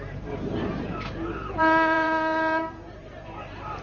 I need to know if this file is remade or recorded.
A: remade